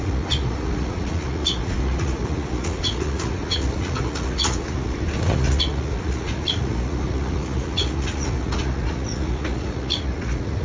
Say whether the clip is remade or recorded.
remade